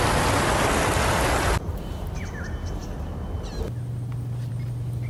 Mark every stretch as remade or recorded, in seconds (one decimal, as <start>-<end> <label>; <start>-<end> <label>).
0.0-1.7 recorded; 1.7-2.2 remade; 2.2-5.1 recorded